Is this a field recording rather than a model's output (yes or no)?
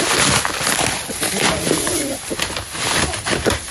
yes